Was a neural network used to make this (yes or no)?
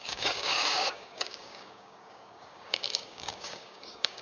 yes